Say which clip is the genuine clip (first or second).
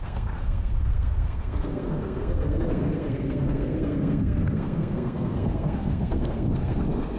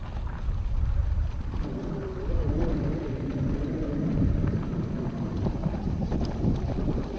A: second